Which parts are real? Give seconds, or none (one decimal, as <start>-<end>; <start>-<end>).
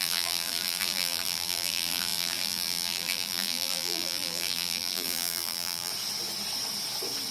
5.9-7.3